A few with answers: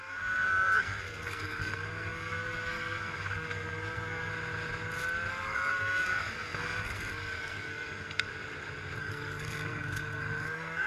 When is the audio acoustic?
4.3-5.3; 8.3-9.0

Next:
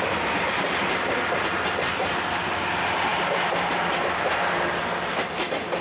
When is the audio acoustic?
0.0-5.8

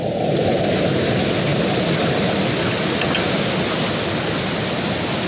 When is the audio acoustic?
0.0-5.3